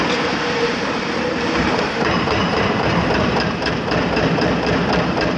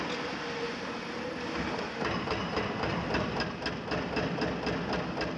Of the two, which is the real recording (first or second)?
second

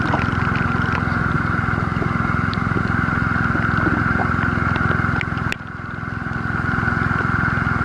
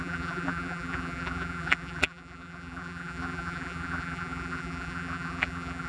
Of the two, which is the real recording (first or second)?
first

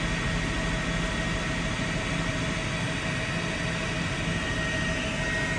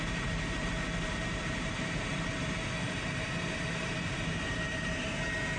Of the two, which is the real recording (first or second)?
first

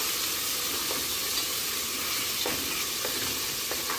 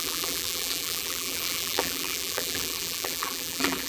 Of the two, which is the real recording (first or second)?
first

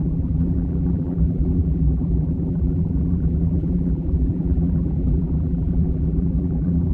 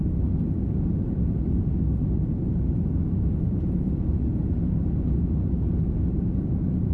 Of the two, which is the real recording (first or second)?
second